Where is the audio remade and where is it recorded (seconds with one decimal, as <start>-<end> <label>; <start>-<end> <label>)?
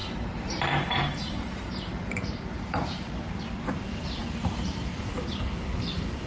0.0-3.1 remade; 3.1-4.2 recorded; 4.2-5.1 remade; 5.1-6.3 recorded